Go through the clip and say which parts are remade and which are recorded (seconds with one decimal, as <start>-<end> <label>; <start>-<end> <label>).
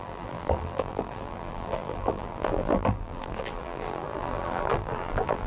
0.0-5.5 remade